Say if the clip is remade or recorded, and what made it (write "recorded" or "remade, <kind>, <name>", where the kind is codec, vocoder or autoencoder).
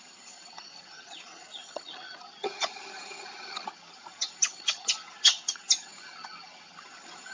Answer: remade, vocoder, HiFi-GAN